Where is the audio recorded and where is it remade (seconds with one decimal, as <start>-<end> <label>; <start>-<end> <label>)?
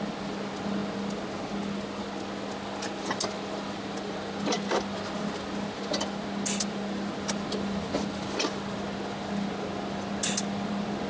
0.0-11.1 recorded